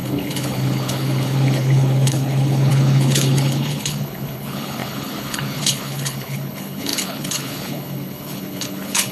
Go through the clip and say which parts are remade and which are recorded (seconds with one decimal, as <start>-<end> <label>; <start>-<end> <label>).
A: 0.0-9.1 remade